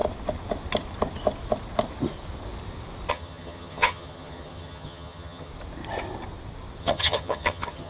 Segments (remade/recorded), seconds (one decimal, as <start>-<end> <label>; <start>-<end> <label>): 0.0-3.1 recorded; 3.1-5.5 remade; 5.5-6.8 recorded; 6.8-7.9 remade